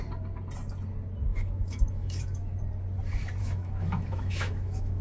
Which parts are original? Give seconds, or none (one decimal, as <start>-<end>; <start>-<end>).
0.0-1.3; 2.6-3.4